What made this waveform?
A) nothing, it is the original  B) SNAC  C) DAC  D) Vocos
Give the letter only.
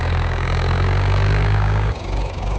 C